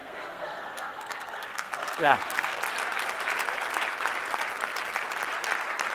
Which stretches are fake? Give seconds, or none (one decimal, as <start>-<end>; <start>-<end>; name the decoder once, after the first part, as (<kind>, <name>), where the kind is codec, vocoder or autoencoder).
0.0-2.6 (codec, SNAC)